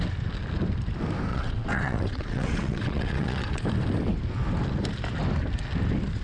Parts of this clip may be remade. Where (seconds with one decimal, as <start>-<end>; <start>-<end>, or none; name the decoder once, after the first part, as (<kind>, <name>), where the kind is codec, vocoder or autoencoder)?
1.3-3.6 (vocoder, WaveNeXt)